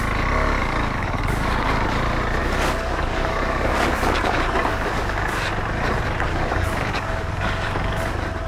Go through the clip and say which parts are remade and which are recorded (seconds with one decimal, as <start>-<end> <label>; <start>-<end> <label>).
0.0-0.6 recorded; 0.6-1.9 remade; 1.9-2.4 recorded; 2.4-5.5 remade; 5.5-6.3 recorded; 6.3-8.0 remade; 8.0-8.5 recorded